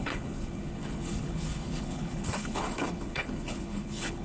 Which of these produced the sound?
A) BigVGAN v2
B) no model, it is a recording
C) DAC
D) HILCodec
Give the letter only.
D